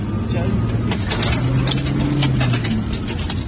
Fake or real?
real